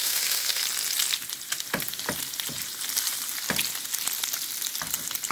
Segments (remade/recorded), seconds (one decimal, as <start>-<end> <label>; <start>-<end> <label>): 0.0-0.6 remade; 0.6-5.3 recorded